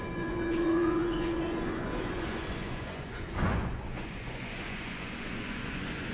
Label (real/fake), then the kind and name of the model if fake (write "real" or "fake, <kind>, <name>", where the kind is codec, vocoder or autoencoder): fake, vocoder, Vocos